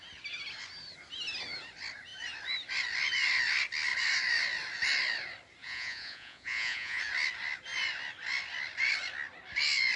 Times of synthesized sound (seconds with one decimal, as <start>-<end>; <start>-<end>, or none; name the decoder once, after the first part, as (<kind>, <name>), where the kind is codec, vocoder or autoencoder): 5.6-7.0 (vocoder, Vocos)